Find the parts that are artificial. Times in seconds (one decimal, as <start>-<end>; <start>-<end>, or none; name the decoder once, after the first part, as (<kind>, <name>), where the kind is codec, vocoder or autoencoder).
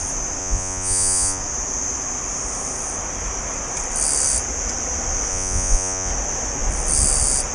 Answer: 0.4-1.4 (vocoder, Vocos); 5.3-6.1